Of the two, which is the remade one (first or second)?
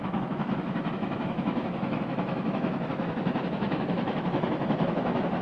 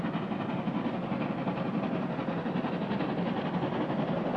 first